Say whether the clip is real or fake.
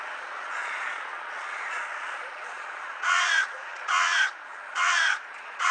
fake